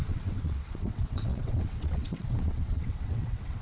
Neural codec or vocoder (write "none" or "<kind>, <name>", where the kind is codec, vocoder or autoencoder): vocoder, WaveNeXt